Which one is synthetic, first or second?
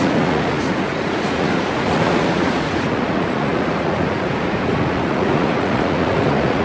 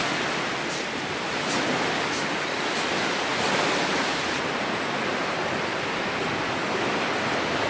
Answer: first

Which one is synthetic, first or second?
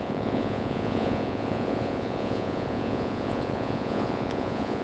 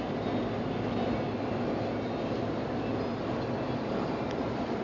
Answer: first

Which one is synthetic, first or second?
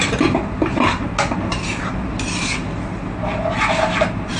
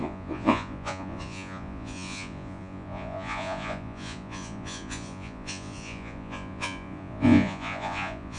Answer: second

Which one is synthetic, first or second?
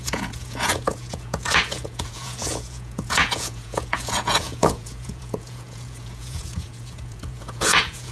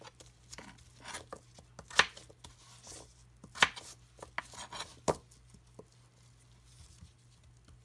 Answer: first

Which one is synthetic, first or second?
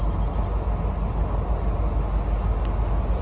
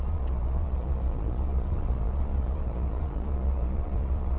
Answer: second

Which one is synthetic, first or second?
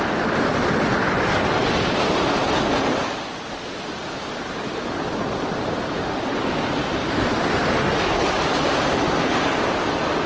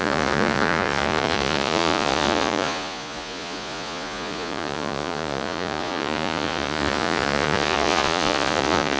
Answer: second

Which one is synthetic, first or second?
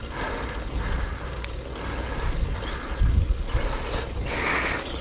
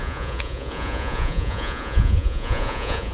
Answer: second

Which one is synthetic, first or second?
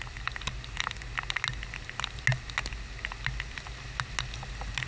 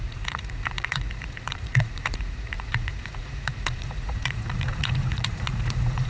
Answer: second